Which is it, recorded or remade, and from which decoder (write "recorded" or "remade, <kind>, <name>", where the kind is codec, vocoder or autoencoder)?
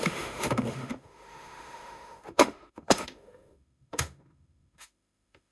remade, autoencoder, DAC-VAE